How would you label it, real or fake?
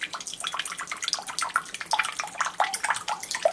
real